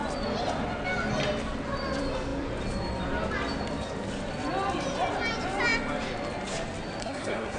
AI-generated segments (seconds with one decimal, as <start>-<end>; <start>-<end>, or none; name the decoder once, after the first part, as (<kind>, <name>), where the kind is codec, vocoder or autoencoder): 7.0-7.6 (codec, SNAC)